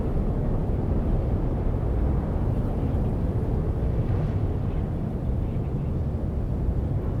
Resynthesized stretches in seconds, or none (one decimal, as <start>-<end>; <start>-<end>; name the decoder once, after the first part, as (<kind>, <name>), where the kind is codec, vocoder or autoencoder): none